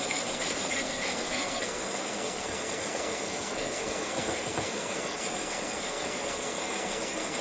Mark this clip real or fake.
fake